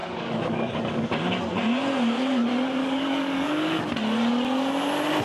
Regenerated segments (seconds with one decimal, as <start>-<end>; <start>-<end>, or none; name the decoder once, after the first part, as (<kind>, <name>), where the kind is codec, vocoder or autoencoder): 0.0-1.1 (codec, DAC); 2.8-3.8